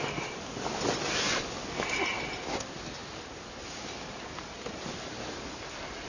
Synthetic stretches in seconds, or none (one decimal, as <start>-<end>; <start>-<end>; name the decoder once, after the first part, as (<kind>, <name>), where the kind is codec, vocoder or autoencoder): none